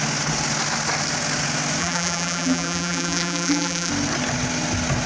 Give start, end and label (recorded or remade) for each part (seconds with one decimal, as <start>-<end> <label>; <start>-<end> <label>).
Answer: 0.0-1.8 recorded; 1.8-3.9 remade; 3.9-5.1 recorded